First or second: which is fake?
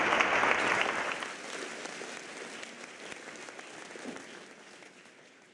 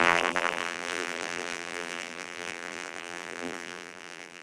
second